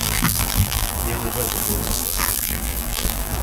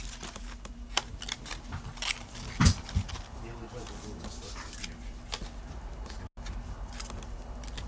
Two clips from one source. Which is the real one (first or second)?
second